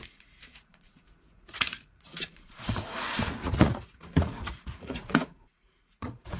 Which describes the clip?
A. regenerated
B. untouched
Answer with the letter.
A